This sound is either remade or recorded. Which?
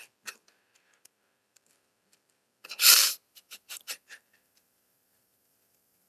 remade